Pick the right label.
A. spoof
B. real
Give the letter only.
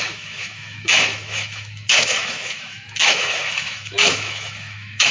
A